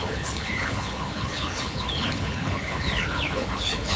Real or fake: fake